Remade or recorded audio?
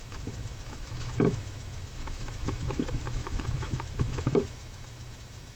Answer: remade